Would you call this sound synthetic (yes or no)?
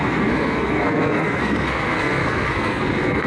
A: yes